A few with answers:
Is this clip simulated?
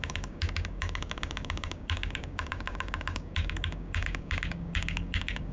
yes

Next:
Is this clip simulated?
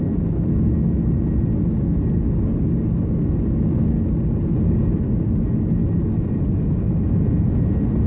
no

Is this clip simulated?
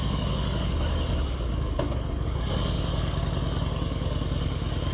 yes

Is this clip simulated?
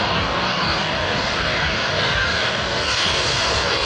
yes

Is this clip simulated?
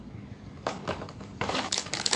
yes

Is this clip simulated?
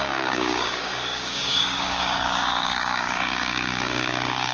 yes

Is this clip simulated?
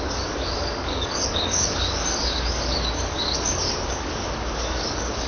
yes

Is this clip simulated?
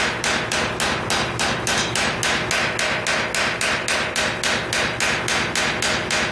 no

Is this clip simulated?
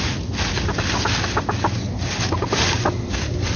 no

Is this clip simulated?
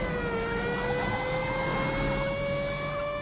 no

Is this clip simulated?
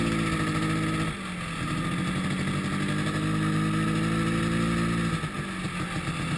no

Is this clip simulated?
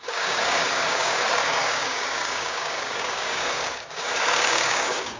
yes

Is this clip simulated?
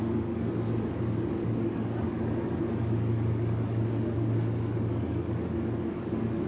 yes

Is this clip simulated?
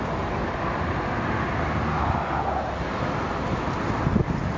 no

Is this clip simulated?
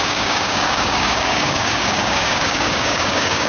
yes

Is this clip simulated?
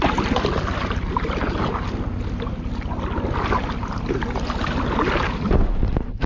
no